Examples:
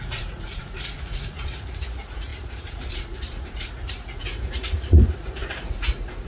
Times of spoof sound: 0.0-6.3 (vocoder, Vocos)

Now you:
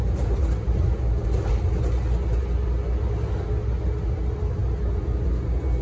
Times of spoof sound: none

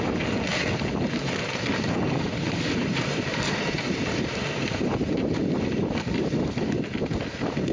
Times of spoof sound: 1.4-5.4 (vocoder, BigVGAN v2)